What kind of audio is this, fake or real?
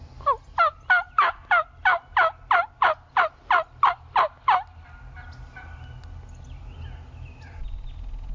real